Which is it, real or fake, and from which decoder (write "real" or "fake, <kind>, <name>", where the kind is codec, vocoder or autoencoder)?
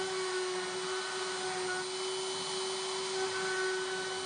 real